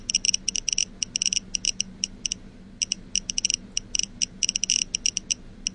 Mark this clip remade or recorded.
recorded